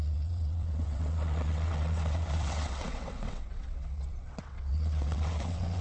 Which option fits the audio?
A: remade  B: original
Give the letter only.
A